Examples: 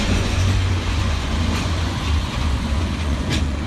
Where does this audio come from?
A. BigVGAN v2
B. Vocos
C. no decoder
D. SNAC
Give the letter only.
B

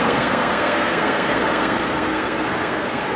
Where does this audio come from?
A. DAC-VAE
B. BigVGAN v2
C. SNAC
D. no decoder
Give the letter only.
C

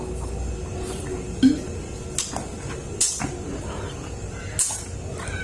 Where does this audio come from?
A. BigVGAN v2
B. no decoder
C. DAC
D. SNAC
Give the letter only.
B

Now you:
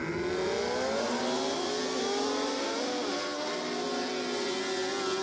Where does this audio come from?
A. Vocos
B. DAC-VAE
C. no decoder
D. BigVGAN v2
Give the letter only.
C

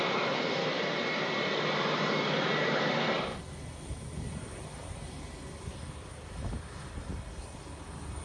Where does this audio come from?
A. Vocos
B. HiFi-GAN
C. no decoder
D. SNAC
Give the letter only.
C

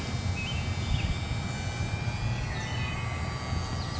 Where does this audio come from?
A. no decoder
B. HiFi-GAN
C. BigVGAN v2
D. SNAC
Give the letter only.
A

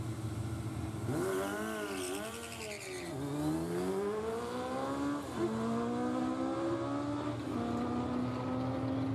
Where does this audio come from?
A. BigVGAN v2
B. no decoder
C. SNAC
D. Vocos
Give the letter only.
B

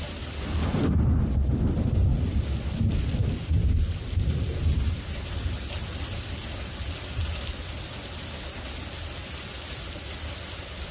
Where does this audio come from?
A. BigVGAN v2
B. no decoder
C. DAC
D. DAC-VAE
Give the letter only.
B